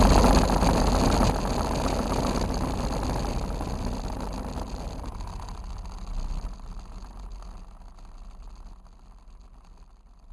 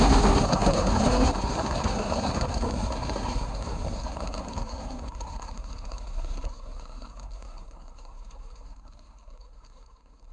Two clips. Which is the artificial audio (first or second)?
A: second